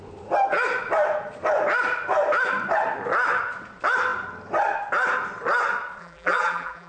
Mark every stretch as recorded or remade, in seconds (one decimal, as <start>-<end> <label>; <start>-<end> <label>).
0.0-6.0 recorded; 6.0-6.9 remade